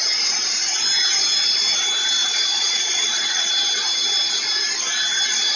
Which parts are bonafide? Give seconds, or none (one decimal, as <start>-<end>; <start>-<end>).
0.0-2.2; 3.5-5.6